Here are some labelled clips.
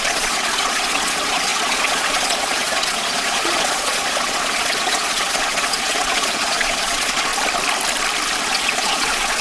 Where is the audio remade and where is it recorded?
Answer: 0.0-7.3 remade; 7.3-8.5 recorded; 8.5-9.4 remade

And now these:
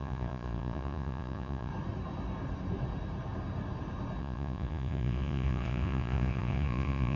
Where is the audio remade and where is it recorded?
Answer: 0.0-1.7 remade; 1.7-4.2 recorded; 4.2-7.2 remade

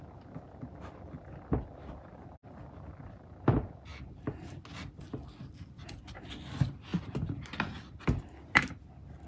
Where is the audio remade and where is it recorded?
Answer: 0.0-9.3 recorded

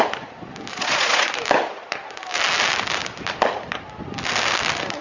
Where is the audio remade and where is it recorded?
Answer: 0.0-0.7 recorded; 0.7-1.3 remade; 1.3-5.0 recorded

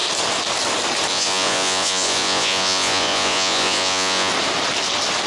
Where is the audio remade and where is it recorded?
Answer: 0.0-1.1 recorded; 1.1-4.3 remade; 4.3-5.3 recorded

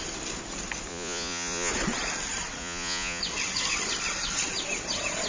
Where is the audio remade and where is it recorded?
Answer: 0.0-0.9 recorded; 0.9-1.7 remade; 1.7-2.6 recorded; 2.6-3.2 remade; 3.2-5.3 recorded